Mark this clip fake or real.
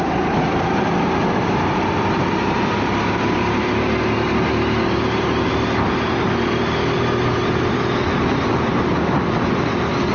real